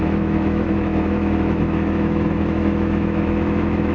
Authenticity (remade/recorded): remade